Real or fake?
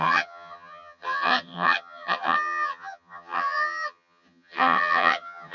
fake